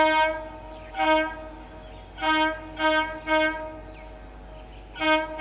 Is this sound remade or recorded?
recorded